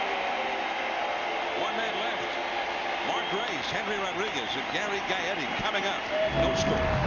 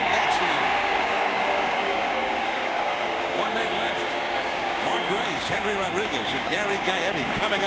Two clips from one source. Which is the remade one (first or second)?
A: second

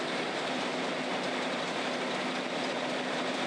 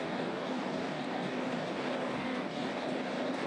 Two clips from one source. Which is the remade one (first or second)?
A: second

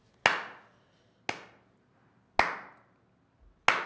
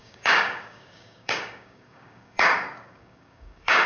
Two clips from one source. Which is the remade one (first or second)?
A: second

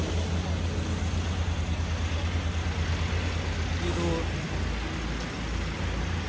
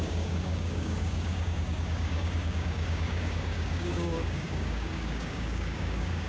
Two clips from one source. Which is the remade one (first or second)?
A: second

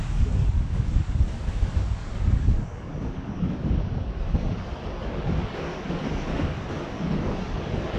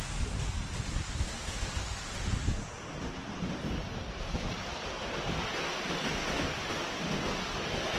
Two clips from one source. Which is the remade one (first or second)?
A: first